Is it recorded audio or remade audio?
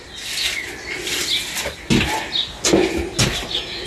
recorded